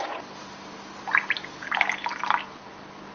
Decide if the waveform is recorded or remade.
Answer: recorded